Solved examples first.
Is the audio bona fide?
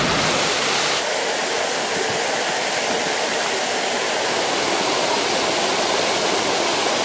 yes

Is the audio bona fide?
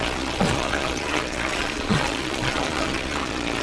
no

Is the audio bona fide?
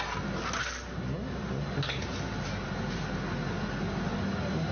yes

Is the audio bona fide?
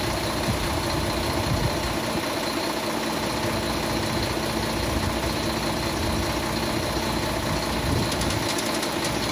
yes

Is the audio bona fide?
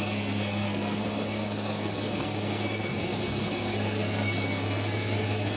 no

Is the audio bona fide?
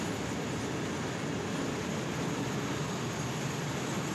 yes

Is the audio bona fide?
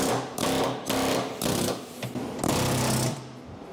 yes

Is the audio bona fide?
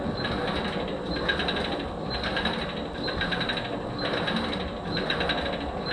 yes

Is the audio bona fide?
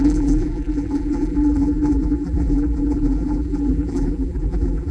no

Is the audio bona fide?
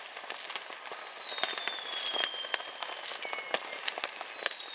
yes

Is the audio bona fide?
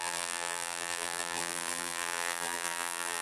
no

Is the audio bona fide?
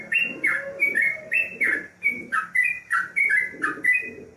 yes